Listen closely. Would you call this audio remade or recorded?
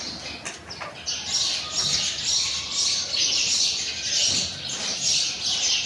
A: recorded